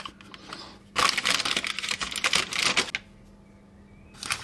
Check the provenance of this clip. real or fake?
real